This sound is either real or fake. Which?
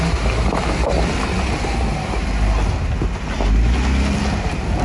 real